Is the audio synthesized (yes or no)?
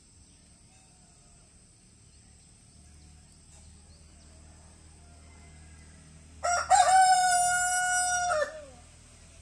no